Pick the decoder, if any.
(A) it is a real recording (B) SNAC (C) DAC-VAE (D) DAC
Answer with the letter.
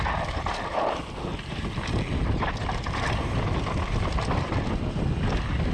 A